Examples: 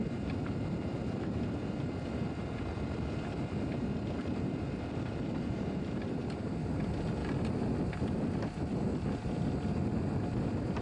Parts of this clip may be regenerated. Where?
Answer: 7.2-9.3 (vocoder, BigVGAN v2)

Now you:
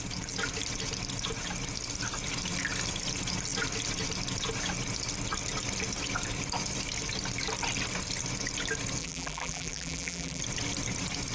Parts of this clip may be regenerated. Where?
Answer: 9.0-10.4 (vocoder, BigVGAN v2)

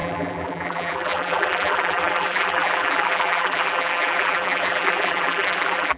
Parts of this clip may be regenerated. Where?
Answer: 0.0-6.0 (vocoder, BigVGAN v2)

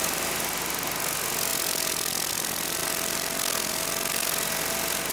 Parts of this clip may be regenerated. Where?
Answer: none

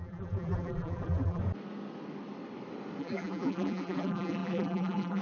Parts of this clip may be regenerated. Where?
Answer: 0.0-1.4 (vocoder, BigVGAN v2); 3.0-5.2

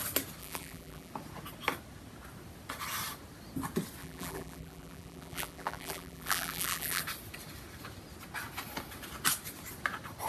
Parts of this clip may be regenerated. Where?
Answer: 0.4-1.1 (vocoder, BigVGAN v2); 4.0-7.0